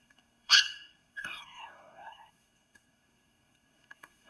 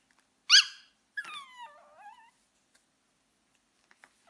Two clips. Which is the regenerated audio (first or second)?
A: first